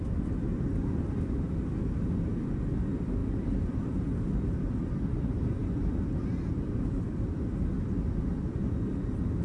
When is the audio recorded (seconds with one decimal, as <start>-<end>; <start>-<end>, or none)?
0.0-9.4